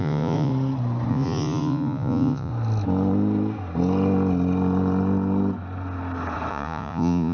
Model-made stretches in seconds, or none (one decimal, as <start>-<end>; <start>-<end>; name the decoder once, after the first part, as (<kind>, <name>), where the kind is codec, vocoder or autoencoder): 0.0-0.5 (vocoder, Vocos); 1.1-2.5; 6.5-7.3